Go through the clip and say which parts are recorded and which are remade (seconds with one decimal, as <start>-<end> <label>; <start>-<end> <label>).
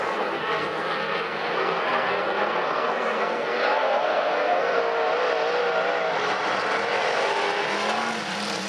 0.0-4.8 remade; 4.8-8.7 recorded